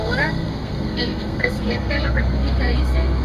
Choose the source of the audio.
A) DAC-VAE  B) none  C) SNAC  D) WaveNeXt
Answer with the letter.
C